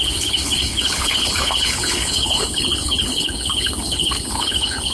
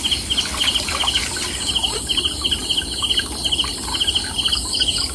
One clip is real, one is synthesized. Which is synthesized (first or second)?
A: first